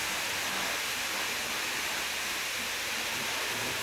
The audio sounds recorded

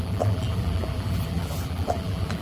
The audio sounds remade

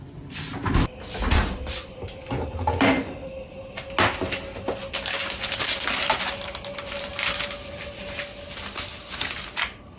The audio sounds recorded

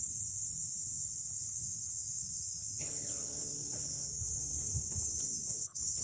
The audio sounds remade